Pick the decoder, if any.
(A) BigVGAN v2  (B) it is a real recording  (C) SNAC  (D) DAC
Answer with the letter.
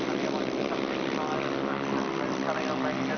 B